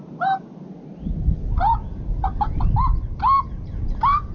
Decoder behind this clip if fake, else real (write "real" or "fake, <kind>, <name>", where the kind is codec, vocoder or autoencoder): real